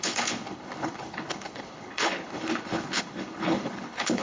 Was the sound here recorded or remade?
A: remade